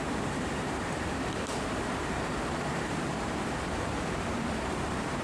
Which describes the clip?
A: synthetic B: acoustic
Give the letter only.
A